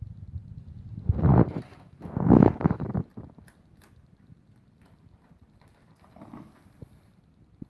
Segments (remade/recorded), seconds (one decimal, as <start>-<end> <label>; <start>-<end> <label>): 0.0-1.7 recorded; 1.7-2.8 remade; 2.8-7.7 recorded